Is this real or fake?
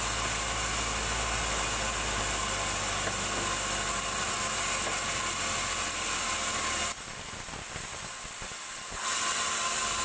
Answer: real